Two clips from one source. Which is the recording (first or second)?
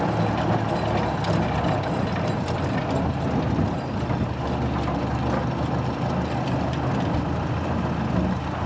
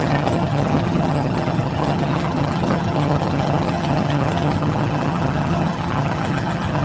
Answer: first